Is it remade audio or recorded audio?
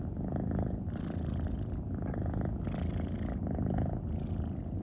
recorded